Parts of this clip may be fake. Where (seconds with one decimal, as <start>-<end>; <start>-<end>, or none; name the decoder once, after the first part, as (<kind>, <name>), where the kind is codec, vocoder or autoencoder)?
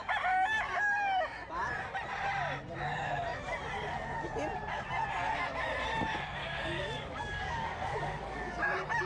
6.4-8.5 (codec, DAC)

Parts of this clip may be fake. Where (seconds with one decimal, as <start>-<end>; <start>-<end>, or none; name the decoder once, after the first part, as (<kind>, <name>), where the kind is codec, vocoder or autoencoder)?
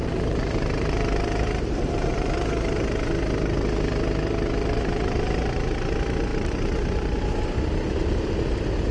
0.0-3.0 (vocoder, BigVGAN v2); 4.6-5.5; 6.3-7.2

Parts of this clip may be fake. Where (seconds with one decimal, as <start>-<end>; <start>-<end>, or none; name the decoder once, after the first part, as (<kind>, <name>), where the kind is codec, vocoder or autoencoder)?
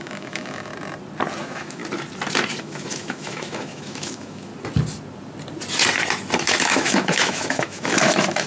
0.0-0.7 (autoencoder, DAC-VAE); 1.4-1.8; 2.6-4.5; 6.4-8.5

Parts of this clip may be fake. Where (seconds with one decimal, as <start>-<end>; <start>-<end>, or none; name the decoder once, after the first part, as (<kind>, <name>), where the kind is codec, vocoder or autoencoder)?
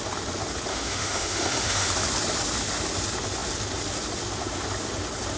0.7-1.9 (autoencoder, DAC-VAE)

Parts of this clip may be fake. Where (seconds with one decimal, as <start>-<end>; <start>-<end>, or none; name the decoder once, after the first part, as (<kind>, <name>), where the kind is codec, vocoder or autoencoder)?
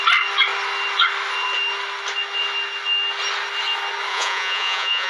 4.1-5.1 (vocoder, Vocos)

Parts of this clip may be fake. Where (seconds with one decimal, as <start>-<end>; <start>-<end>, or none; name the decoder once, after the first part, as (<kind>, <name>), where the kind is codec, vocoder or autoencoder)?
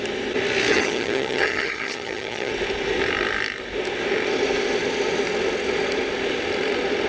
0.7-2.5 (vocoder, HiFi-GAN)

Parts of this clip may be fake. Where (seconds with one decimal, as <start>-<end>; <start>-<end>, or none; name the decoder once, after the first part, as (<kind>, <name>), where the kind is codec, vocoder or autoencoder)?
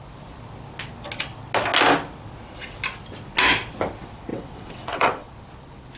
4.3-5.3 (vocoder, WaveNeXt)